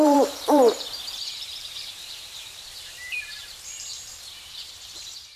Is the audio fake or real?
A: fake